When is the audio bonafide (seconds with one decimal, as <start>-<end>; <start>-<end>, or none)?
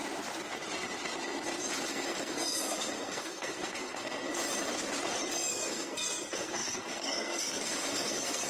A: 0.0-1.9; 4.3-5.5